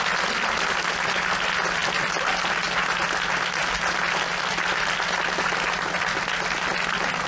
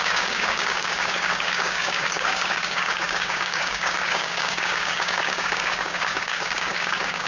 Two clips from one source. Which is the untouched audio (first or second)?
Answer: first